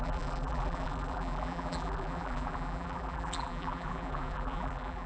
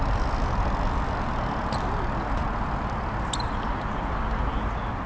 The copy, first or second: first